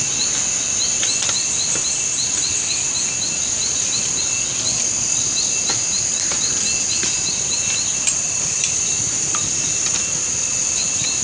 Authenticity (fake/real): real